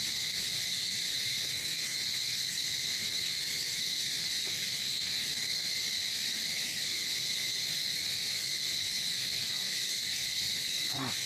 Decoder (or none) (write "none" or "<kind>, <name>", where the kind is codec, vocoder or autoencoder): codec, SNAC